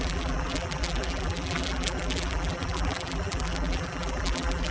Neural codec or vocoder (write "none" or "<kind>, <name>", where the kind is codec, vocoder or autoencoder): vocoder, BigVGAN v2